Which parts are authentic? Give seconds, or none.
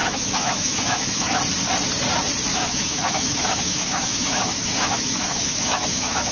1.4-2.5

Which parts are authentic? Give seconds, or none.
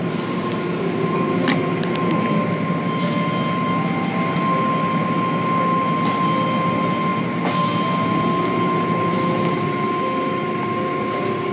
0.0-11.5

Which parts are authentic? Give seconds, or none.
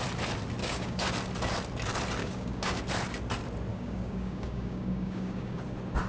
0.0-0.6; 1.1-2.2; 2.8-3.7; 5.6-6.1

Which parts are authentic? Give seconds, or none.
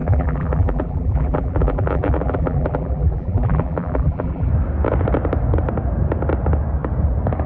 4.5-7.5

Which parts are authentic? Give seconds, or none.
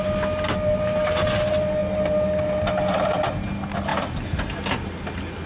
0.0-5.5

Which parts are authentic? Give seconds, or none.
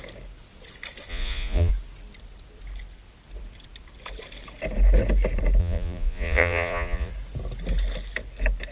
0.0-1.1; 1.7-5.6; 7.1-8.7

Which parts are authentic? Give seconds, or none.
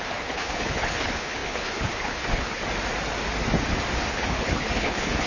2.6-4.1